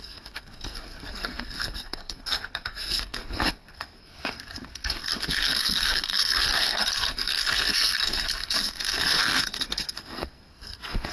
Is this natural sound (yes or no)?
no